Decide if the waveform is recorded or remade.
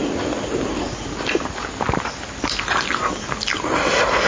recorded